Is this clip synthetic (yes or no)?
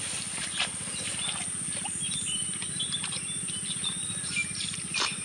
yes